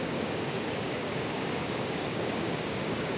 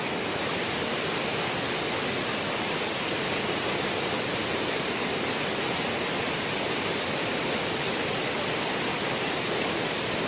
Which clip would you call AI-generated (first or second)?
first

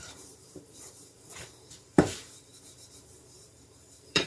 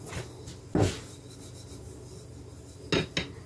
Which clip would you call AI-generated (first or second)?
first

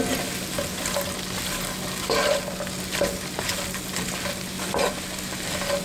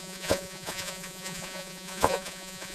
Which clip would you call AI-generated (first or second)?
second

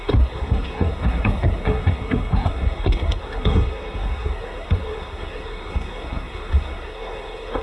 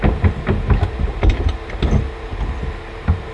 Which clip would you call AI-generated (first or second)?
first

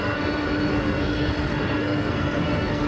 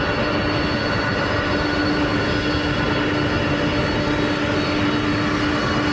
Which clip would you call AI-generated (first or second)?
first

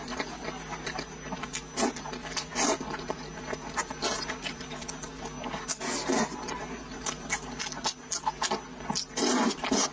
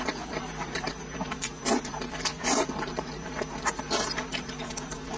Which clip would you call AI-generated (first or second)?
second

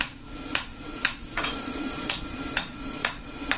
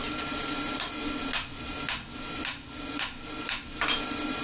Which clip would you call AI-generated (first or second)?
first